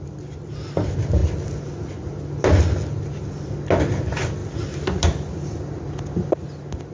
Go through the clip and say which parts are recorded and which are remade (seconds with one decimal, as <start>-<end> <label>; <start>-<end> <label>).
0.0-6.9 recorded